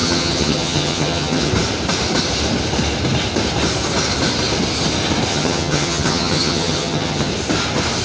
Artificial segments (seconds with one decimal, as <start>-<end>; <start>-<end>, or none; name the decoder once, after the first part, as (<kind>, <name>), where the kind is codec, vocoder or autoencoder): 0.0-1.5 (vocoder, HiFi-GAN); 5.3-7.3